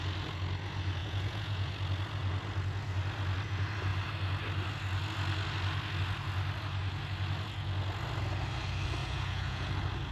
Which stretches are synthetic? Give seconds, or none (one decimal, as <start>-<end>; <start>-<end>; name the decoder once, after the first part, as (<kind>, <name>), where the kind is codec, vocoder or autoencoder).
1.0-1.7 (vocoder, Vocos); 9.0-9.7